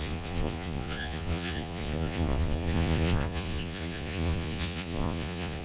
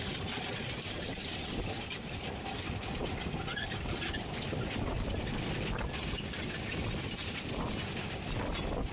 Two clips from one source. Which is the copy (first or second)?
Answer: first